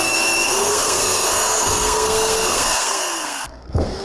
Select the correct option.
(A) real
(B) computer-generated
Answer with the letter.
B